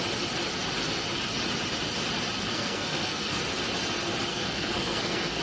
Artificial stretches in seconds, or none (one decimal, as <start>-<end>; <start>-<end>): 2.5-3.4; 4.3-5.4